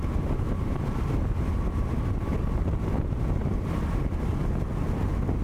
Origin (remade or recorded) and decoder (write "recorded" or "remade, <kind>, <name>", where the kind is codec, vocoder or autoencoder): recorded